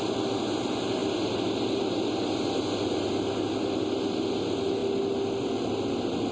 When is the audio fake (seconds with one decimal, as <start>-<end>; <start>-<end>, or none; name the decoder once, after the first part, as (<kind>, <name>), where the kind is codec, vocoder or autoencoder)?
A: none